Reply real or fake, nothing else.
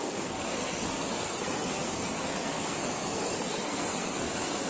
fake